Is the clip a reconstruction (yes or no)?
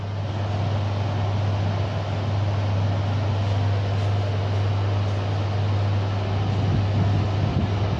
no